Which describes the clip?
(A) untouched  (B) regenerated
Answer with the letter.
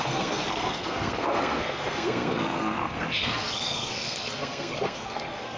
B